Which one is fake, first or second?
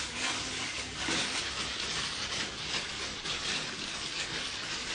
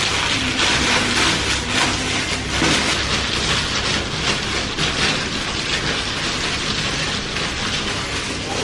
first